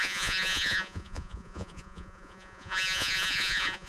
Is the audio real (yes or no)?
no